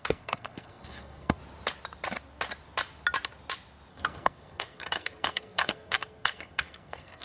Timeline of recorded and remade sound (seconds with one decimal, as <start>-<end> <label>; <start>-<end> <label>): 0.0-1.4 remade; 1.4-3.9 recorded; 3.9-7.2 remade